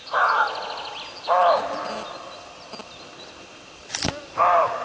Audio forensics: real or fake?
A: real